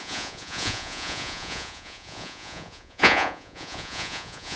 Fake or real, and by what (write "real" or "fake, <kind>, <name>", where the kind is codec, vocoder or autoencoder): fake, vocoder, Vocos